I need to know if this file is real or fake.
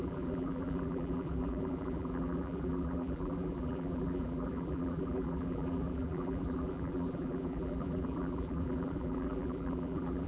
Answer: fake